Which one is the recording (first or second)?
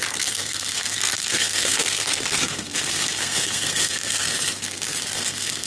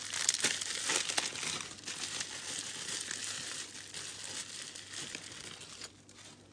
second